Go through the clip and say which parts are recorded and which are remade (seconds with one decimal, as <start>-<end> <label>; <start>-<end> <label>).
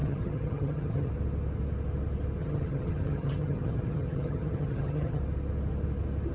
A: 0.0-1.1 remade; 1.1-2.4 recorded; 2.4-5.2 remade; 5.2-6.3 recorded